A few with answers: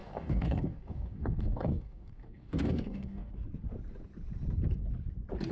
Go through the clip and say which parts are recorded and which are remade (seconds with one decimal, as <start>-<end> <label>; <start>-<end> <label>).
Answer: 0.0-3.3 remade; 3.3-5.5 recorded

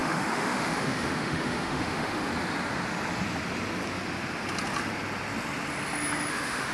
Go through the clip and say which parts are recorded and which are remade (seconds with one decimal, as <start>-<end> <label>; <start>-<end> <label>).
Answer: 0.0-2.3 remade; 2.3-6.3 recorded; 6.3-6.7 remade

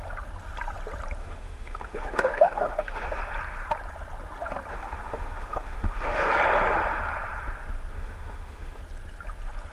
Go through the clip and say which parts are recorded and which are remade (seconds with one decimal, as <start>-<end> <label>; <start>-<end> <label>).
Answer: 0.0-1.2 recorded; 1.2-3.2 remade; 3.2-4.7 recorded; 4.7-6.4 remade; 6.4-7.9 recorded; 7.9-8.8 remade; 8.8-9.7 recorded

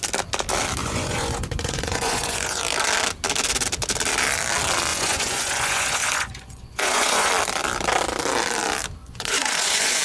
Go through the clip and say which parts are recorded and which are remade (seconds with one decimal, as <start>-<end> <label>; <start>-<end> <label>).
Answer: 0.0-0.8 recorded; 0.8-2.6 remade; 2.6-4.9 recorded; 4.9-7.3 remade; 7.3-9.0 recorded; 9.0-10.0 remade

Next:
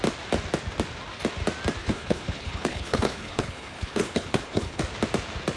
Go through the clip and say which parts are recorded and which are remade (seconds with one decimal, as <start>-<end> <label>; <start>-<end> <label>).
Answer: 0.0-1.8 recorded; 1.8-4.8 remade; 4.8-5.6 recorded

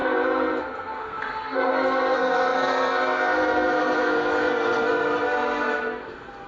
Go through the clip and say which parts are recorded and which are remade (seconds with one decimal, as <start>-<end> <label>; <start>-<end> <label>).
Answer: 0.0-6.5 remade

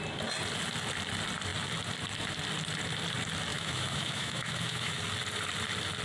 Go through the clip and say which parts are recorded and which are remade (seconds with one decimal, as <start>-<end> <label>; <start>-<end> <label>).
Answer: 0.0-3.5 recorded; 3.5-5.0 remade; 5.0-6.0 recorded

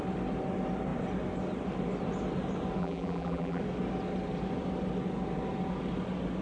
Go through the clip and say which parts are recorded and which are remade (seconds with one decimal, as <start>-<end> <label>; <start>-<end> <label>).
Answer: 0.0-2.8 recorded; 2.8-3.6 remade; 3.6-6.4 recorded